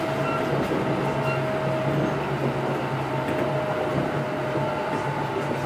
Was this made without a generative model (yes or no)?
yes